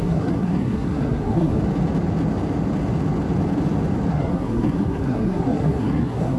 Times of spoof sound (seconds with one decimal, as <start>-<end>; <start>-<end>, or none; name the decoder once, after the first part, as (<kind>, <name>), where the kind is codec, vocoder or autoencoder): 0.0-1.6 (codec, SNAC); 4.1-6.4